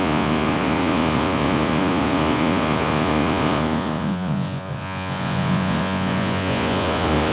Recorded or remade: remade